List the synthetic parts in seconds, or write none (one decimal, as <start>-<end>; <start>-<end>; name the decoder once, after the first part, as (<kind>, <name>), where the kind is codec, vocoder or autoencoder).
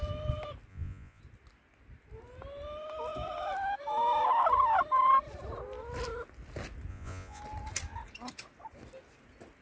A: 0.7-1.2 (vocoder, Vocos); 6.9-7.4